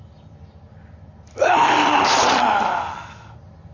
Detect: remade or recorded recorded